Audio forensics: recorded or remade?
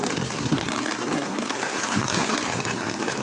remade